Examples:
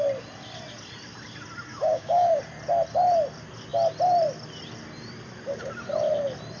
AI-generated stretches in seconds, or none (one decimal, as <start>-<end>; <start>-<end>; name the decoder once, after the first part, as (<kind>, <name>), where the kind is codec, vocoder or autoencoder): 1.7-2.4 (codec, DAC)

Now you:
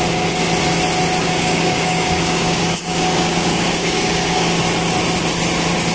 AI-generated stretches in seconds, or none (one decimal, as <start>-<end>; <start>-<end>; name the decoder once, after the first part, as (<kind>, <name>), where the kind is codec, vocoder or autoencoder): 1.2-4.6 (codec, DAC)

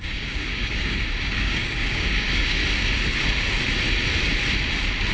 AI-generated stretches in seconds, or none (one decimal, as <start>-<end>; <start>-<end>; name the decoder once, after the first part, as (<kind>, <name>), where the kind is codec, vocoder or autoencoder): 0.0-2.6 (codec, DAC)

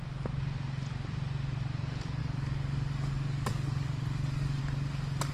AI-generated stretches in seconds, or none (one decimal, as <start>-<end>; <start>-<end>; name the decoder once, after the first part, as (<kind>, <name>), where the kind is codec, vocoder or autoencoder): 2.2-4.6 (codec, DAC)

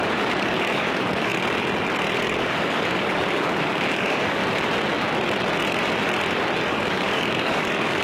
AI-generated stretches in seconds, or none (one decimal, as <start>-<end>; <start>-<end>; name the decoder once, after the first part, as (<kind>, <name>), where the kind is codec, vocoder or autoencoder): 0.0-1.3 (codec, DAC); 2.2-4.4; 6.7-8.0

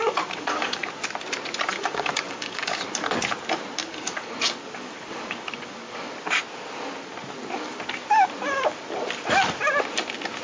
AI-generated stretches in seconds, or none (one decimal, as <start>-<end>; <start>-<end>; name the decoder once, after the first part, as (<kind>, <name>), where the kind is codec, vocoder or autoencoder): 0.0-0.9 (codec, DAC); 1.7-2.8; 3.8-6.1